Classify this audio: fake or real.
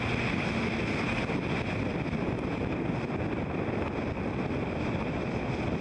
real